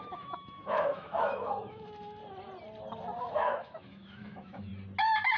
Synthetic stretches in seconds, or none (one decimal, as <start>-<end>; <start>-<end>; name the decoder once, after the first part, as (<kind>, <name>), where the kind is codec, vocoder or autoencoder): 0.0-2.2 (autoencoder, DAC-VAE); 3.2-4.7